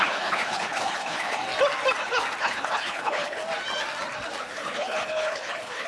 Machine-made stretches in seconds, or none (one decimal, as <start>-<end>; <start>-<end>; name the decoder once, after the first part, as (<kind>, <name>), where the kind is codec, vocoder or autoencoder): 0.0-1.4 (codec, HILCodec); 2.4-3.4; 4.4-5.9